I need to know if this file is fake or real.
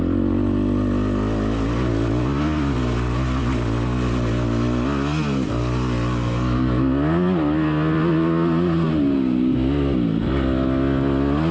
real